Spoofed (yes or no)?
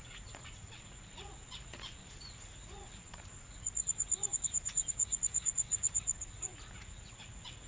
yes